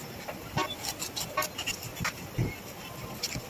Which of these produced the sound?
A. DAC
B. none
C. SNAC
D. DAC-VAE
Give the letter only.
B